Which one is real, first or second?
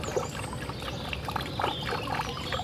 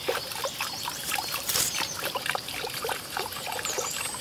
first